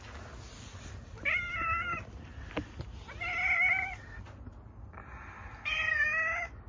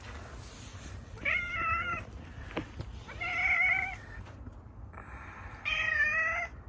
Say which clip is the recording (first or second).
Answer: first